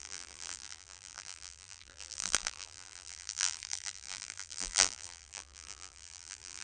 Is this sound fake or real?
fake